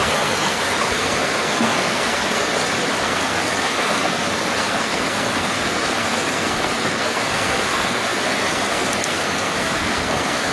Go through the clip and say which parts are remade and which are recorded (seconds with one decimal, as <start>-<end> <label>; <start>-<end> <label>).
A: 0.0-2.5 remade; 2.5-3.0 recorded; 3.0-10.5 remade